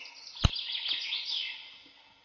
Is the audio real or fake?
real